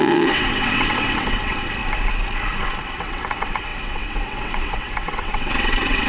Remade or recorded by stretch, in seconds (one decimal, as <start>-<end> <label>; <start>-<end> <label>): 0.0-1.8 remade; 1.8-2.8 recorded; 2.8-6.1 remade